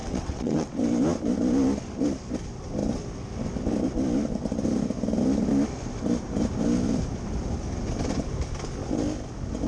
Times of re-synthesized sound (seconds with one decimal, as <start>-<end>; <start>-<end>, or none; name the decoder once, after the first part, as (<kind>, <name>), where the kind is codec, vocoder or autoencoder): 0.0-0.7 (vocoder, WaveNeXt)